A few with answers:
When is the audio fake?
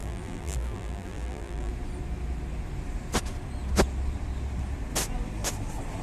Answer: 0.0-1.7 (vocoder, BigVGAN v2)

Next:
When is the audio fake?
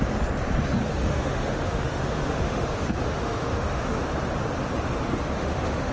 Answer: 1.0-4.0 (autoencoder, DAC-VAE); 5.4-5.9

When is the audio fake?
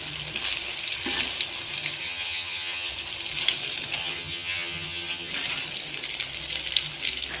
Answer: 2.0-2.9 (vocoder, HiFi-GAN); 4.0-5.3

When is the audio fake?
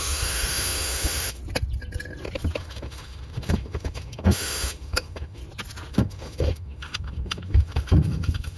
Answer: 0.0-1.4 (autoencoder, DAC-VAE); 2.6-5.4; 5.9-8.6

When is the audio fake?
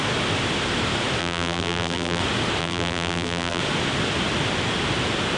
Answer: 1.2-2.2 (vocoder, BigVGAN v2); 2.6-3.6